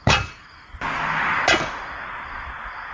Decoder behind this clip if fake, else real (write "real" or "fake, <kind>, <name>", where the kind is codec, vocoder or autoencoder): real